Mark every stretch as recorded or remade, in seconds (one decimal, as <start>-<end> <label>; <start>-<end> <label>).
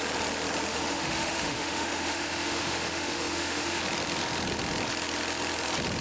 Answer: 0.0-0.7 recorded; 0.7-3.8 remade; 3.8-6.0 recorded